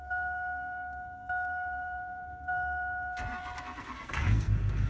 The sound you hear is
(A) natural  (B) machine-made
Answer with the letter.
B